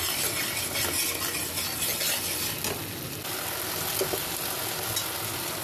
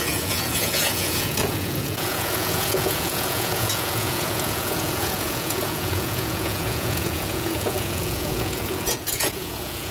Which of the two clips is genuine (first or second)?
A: first